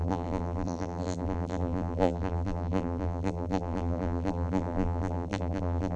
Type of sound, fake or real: fake